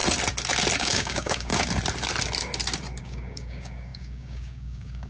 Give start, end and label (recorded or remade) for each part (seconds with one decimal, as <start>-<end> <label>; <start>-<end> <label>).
0.0-0.8 recorded; 0.8-1.5 remade; 1.5-3.0 recorded; 3.0-5.1 remade